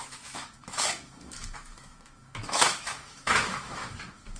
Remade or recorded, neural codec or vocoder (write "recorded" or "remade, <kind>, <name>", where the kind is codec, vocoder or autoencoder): remade, autoencoder, DAC-VAE